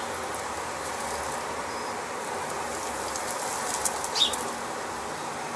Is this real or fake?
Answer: real